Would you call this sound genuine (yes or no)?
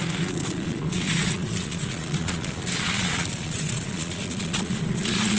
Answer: no